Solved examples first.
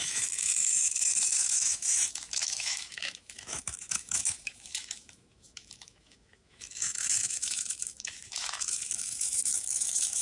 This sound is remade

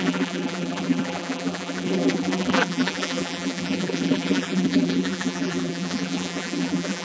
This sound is remade